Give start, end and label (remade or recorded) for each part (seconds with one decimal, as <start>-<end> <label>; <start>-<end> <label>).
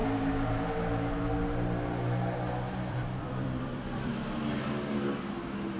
0.0-2.9 recorded; 2.9-4.1 remade; 4.1-5.8 recorded